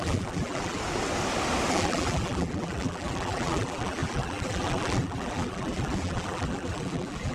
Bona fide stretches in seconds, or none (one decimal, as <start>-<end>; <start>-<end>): 0.8-1.7

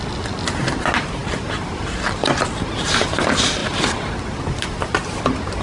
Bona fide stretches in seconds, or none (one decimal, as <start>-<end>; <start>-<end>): 0.0-3.6; 4.8-5.6

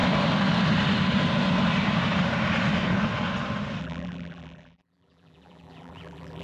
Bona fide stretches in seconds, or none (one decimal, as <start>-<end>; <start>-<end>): 0.0-3.8

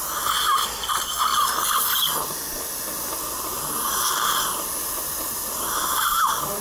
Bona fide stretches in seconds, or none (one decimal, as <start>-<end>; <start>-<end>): 0.0-2.3; 3.0-3.5